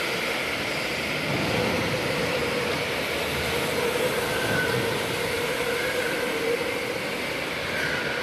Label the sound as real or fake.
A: real